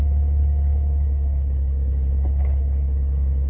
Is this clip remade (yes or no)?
yes